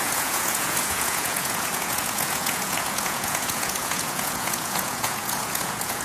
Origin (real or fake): fake